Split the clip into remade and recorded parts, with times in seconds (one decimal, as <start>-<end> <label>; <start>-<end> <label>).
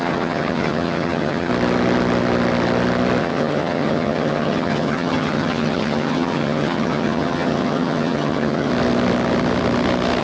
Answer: 0.0-1.5 remade; 1.5-3.2 recorded; 3.2-8.7 remade; 8.7-10.2 recorded